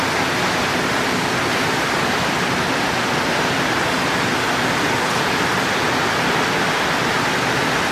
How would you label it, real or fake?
real